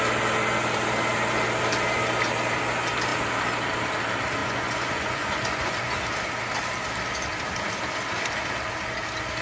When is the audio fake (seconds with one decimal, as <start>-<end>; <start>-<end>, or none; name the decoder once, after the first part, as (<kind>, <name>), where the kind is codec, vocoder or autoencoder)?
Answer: 4.4-6.0 (vocoder, Vocos)